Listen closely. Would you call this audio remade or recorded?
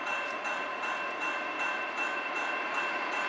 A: remade